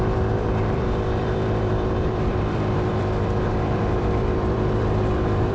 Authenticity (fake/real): fake